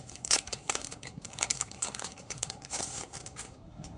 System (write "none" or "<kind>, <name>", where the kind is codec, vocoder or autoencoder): codec, SNAC